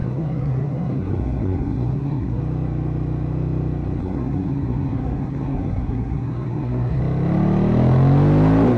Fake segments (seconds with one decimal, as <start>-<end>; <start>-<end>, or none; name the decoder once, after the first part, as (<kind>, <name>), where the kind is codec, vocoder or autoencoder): 0.0-2.4 (codec, SNAC); 4.0-7.0